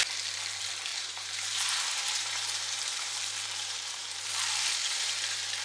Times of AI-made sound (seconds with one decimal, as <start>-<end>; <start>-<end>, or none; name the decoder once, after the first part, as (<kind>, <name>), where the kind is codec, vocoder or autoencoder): 0.9-4.3 (vocoder, BigVGAN v2); 4.8-5.6